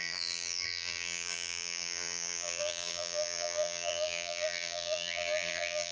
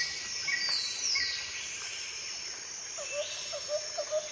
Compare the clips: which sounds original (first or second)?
second